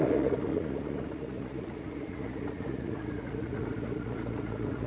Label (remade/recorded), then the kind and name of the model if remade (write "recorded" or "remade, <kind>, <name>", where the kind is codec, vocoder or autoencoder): remade, vocoder, Vocos